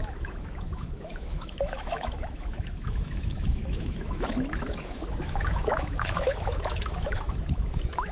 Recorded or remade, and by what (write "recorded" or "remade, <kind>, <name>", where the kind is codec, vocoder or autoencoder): remade, autoencoder, DAC-VAE